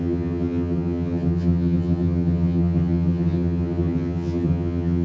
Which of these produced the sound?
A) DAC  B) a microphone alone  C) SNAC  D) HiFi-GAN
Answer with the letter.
D